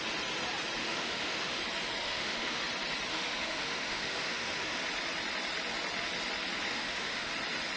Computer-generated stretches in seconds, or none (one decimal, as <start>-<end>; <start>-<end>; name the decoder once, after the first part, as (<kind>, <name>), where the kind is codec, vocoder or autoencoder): 0.8-1.6 (autoencoder, DAC-VAE); 2.0-2.6; 3.1-4.8; 6.7-7.3

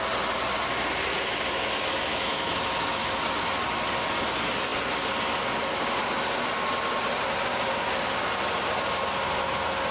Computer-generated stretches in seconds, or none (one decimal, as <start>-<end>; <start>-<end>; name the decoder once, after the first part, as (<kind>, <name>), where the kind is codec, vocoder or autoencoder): 2.1-3.1 (autoencoder, DAC-VAE)

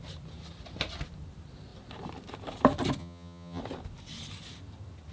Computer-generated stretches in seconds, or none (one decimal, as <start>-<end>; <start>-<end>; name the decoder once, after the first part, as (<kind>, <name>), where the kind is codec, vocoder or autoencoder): 3.0-3.6 (vocoder, HiFi-GAN)